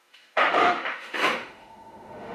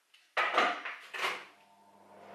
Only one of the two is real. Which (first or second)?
second